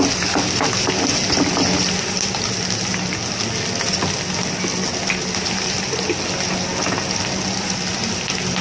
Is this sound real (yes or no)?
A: yes